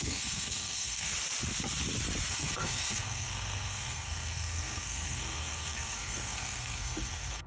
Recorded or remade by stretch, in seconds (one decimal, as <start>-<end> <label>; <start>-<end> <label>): 0.0-1.1 remade; 1.1-2.3 recorded; 2.3-7.5 remade